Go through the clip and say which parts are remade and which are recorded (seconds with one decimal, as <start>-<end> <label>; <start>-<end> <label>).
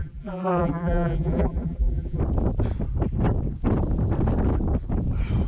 0.0-2.2 remade; 2.2-5.5 recorded